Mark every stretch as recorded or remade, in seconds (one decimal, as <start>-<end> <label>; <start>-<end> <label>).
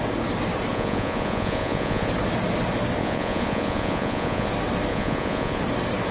0.0-0.7 recorded; 0.7-2.1 remade; 2.1-3.0 recorded; 3.0-4.5 remade; 4.5-4.9 recorded; 4.9-5.6 remade; 5.6-6.1 recorded